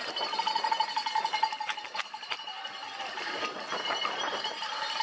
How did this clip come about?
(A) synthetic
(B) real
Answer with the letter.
A